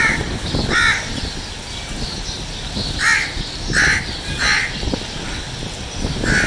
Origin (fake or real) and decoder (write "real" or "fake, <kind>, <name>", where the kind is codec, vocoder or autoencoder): real